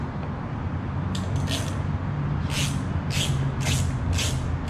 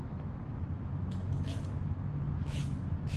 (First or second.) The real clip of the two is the first